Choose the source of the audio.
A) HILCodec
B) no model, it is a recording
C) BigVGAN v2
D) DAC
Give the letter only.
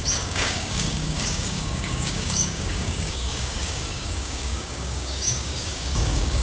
D